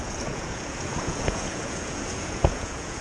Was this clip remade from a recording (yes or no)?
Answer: yes